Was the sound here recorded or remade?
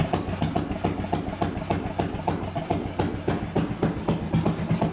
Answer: recorded